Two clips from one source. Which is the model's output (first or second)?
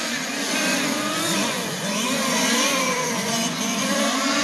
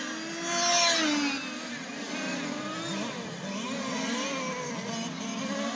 first